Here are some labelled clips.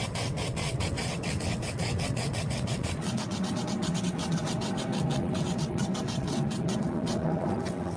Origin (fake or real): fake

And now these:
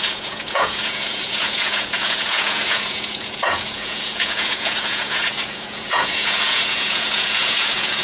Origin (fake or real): fake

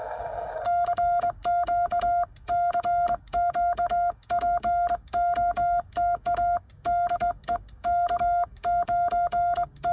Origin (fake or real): fake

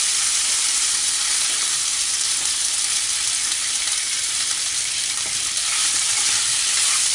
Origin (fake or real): fake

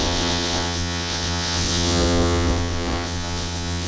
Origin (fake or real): fake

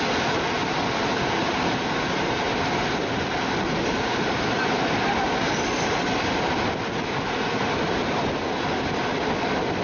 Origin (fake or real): real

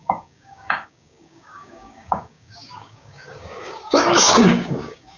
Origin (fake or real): fake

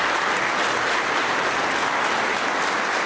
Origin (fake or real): real